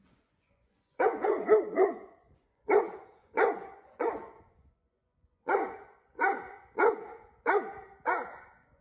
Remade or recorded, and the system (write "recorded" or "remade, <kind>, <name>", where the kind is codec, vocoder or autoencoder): remade, vocoder, Vocos